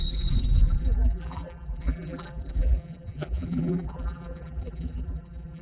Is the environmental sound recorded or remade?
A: remade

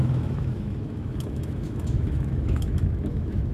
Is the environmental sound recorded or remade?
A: remade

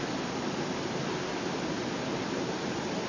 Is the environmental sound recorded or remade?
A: recorded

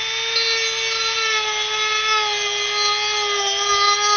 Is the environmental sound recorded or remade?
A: recorded